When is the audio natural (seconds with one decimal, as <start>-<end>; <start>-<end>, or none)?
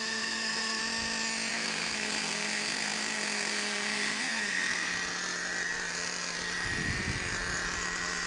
0.8-1.5; 4.9-8.3